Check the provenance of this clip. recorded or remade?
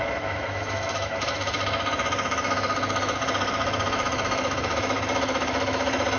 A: remade